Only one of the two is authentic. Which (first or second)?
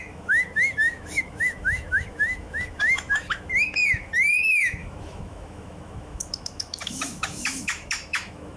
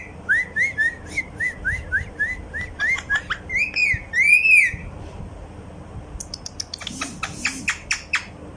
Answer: second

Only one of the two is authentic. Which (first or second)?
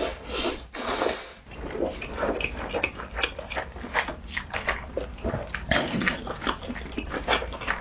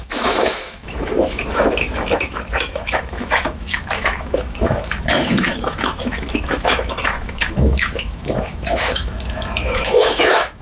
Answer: first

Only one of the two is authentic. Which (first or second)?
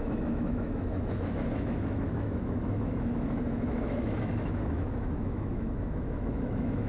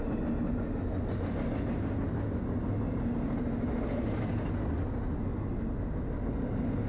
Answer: second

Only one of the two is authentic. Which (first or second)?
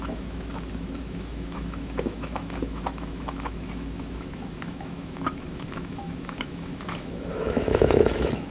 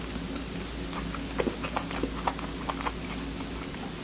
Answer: second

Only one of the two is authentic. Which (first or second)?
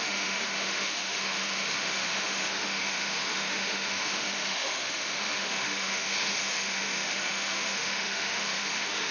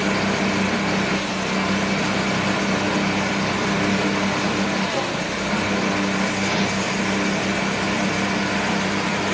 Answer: second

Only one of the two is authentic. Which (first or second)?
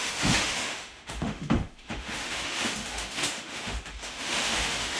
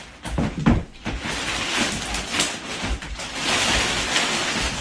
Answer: second